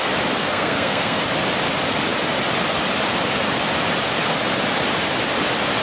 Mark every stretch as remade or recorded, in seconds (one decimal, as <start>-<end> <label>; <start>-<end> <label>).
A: 0.0-0.4 recorded; 0.4-1.2 remade; 1.2-5.8 recorded